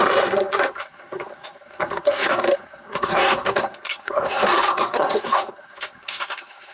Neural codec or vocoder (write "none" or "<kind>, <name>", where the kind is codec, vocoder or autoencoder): codec, SNAC